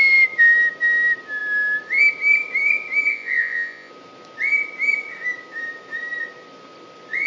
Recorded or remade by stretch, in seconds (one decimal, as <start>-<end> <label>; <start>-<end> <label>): 0.0-3.1 recorded; 3.1-3.9 remade; 3.9-7.3 recorded